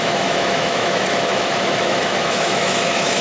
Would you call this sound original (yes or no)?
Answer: no